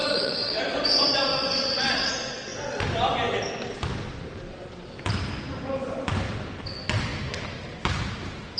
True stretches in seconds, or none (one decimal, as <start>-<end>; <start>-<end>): 0.6-1.3; 2.1-8.6